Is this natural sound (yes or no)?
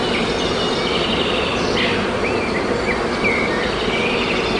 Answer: yes